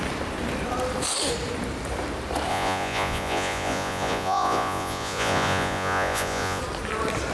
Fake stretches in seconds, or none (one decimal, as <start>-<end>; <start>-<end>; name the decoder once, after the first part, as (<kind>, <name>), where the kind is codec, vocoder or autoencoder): 2.5-6.6 (vocoder, Vocos)